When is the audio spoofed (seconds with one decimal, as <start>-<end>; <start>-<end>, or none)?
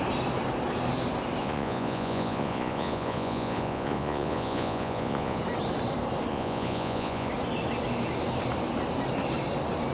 1.4-5.4; 6.3-7.3